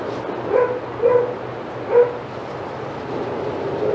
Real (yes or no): yes